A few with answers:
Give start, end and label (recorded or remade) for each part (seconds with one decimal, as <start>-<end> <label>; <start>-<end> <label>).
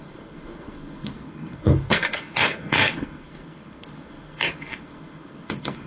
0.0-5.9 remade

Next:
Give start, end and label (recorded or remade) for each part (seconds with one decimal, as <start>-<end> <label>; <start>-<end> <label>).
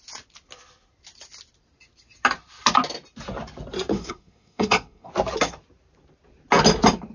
0.0-3.9 recorded; 3.9-5.1 remade; 5.1-7.1 recorded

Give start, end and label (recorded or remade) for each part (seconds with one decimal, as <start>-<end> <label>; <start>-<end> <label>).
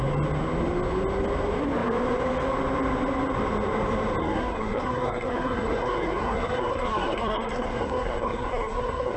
0.0-4.2 recorded; 4.2-9.2 remade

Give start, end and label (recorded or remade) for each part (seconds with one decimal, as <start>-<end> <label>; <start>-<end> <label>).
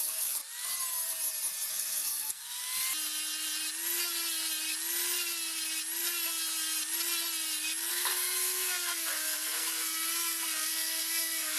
0.0-0.4 remade; 0.4-1.7 recorded; 1.7-2.6 remade; 2.6-7.9 recorded; 7.9-11.6 remade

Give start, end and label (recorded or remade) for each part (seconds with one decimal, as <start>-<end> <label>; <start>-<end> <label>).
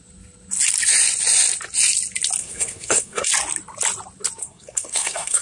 0.0-2.4 recorded; 2.4-3.3 remade; 3.3-4.4 recorded; 4.4-5.4 remade